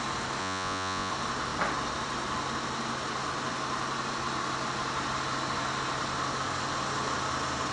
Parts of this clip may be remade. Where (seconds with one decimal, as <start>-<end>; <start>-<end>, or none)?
0.4-1.1